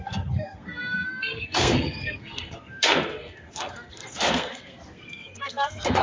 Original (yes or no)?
no